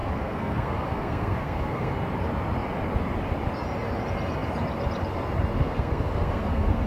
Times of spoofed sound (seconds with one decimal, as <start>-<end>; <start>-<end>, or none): 0.0-1.9; 5.6-6.9